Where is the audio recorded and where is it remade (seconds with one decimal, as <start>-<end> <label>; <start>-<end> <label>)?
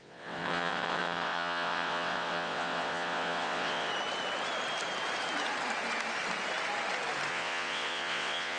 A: 0.0-3.9 remade; 3.9-7.3 recorded; 7.3-8.6 remade